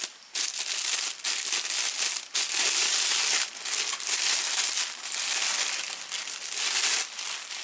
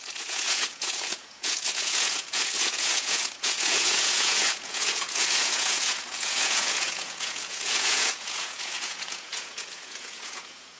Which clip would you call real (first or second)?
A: first